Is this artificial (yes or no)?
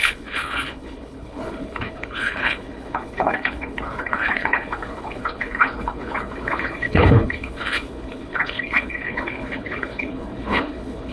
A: yes